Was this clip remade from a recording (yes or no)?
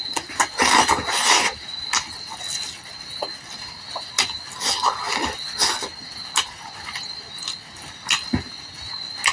no